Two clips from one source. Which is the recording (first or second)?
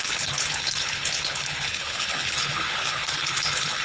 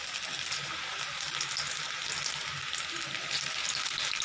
second